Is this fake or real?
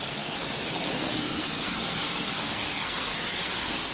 fake